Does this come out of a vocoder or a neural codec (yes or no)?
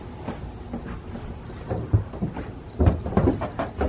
no